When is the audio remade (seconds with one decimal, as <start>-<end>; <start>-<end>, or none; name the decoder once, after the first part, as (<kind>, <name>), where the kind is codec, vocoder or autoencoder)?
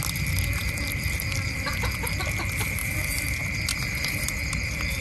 0.6-1.7 (vocoder, BigVGAN v2)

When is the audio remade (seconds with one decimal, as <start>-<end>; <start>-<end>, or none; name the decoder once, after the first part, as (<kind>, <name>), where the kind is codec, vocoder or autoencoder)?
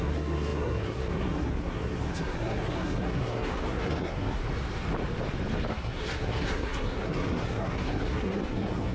0.0-4.4 (codec, SNAC); 5.7-8.9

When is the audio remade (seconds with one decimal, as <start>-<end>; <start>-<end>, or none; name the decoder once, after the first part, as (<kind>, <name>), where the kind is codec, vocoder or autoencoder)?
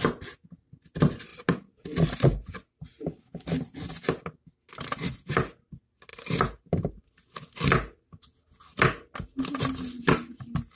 none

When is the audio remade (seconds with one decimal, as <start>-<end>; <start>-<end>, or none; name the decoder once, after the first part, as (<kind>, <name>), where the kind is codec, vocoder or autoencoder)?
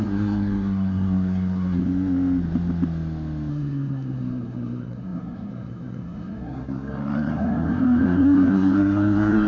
0.0-1.8 (codec, SNAC); 3.5-9.5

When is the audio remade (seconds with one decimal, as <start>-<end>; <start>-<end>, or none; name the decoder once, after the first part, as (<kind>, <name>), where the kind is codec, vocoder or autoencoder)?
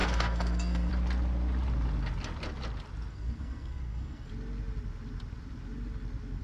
0.0-0.9 (codec, SNAC); 3.1-4.3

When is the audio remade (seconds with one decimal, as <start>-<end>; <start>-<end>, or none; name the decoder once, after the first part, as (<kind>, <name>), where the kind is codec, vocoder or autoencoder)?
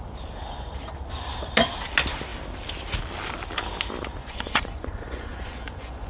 4.2-6.1 (vocoder, Vocos)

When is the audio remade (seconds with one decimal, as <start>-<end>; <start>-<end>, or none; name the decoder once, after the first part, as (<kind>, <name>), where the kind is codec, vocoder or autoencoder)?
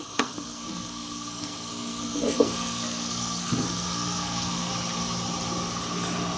0.0-4.7 (codec, SNAC)